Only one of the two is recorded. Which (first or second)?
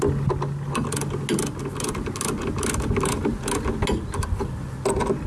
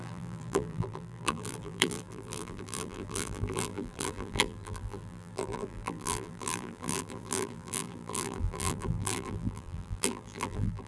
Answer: first